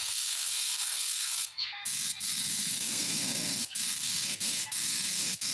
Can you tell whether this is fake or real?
fake